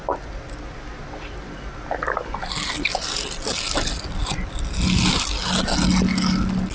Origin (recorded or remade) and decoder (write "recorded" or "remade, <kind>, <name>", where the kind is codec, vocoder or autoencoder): recorded